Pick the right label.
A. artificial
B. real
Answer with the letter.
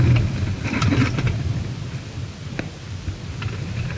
A